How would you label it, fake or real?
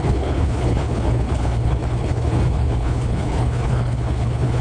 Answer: fake